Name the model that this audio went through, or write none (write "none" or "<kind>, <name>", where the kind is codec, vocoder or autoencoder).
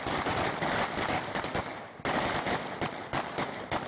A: none